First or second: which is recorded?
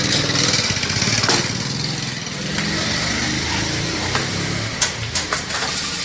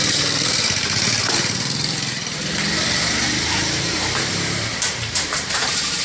first